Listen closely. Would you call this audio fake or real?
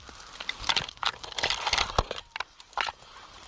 real